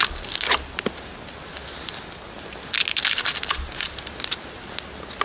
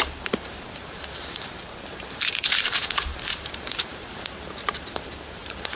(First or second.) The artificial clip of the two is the second